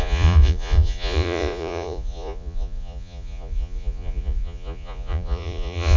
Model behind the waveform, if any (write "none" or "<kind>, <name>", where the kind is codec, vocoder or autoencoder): vocoder, Vocos